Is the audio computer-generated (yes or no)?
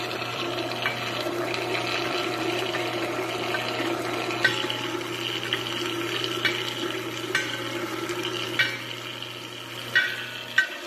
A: no